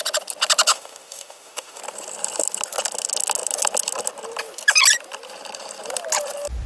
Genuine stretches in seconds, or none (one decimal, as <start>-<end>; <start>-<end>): 0.0-0.7; 1.8-6.7